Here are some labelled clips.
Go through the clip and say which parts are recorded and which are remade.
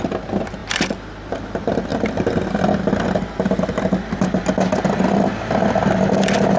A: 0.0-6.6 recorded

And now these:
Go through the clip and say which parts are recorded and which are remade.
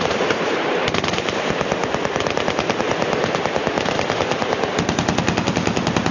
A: 0.0-1.8 remade; 1.8-5.5 recorded; 5.5-6.1 remade